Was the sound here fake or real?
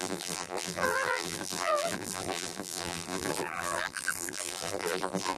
fake